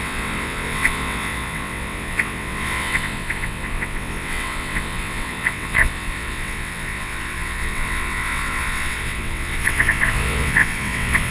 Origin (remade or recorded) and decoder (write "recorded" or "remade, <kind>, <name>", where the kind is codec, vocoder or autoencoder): remade, vocoder, WaveNeXt